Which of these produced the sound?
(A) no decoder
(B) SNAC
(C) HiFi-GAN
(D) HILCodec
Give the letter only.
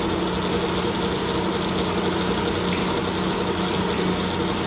A